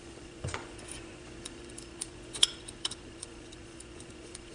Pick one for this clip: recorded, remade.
remade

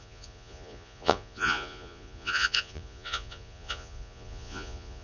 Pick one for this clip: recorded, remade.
remade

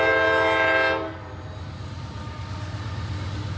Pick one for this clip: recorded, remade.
recorded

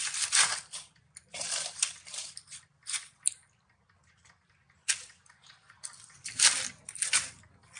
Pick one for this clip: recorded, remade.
recorded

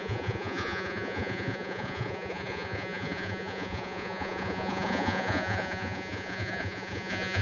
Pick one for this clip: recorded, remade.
remade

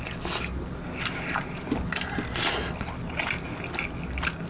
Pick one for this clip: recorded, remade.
recorded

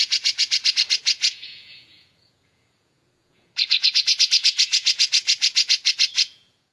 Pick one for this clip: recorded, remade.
remade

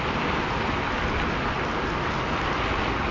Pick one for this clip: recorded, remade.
recorded